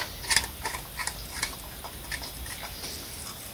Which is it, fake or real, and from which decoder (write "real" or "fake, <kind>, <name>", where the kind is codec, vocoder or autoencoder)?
real